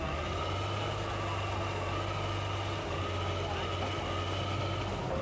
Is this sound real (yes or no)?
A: yes